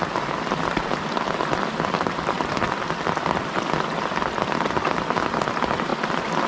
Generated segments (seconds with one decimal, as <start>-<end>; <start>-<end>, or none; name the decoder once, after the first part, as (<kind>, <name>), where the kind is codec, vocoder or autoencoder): none